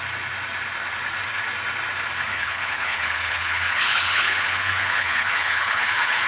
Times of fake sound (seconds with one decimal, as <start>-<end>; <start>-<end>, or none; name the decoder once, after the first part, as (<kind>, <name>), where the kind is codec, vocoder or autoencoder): 2.3-6.3 (codec, HILCodec)